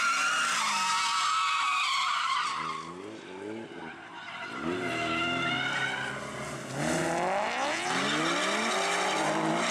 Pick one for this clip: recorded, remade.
recorded